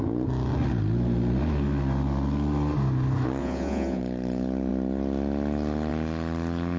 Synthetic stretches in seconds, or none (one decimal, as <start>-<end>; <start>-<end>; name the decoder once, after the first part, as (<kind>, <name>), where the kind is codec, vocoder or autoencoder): 3.4-4.0 (vocoder, Vocos)